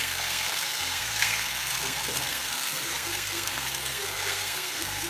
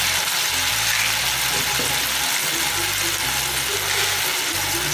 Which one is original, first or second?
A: second